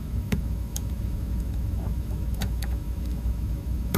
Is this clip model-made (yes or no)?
yes